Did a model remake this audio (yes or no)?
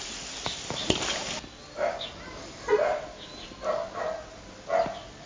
no